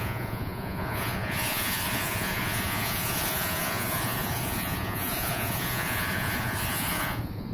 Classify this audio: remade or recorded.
remade